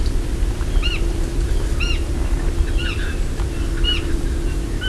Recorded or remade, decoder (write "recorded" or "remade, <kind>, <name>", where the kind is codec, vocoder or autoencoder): recorded